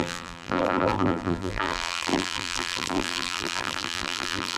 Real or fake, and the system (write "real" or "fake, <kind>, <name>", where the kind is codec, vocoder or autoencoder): fake, vocoder, BigVGAN v2